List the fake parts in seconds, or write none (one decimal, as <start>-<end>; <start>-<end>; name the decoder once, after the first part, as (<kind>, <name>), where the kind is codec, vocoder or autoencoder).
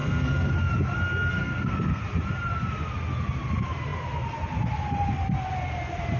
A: 0.0-0.5 (codec, SNAC); 1.3-2.0